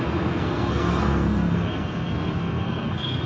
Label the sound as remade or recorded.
remade